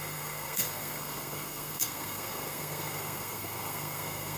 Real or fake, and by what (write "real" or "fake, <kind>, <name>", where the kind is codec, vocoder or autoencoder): fake, codec, SNAC